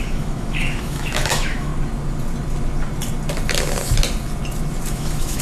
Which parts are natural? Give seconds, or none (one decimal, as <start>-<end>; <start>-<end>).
1.7-4.9